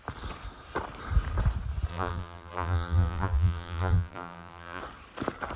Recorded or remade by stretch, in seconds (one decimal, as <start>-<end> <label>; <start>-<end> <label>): 0.0-1.9 recorded; 1.9-4.8 remade; 4.8-5.6 recorded